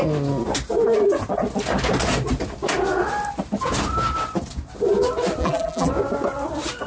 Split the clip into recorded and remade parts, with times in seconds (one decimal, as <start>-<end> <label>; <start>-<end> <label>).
0.0-5.4 recorded; 5.4-5.9 remade; 5.9-6.9 recorded